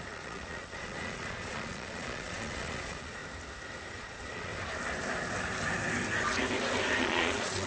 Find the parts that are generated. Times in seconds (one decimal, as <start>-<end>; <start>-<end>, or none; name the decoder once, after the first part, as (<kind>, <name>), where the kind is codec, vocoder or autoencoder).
0.0-3.2 (vocoder, Vocos); 3.9-4.5; 7.0-7.7